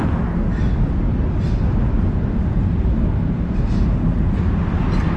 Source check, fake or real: real